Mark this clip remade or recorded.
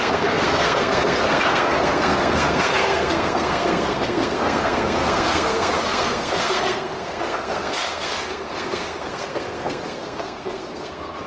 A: remade